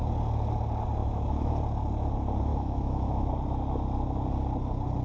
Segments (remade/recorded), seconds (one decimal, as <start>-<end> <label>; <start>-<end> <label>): 0.0-1.0 recorded; 1.0-1.5 remade; 1.5-2.5 recorded; 2.5-3.3 remade; 3.3-5.0 recorded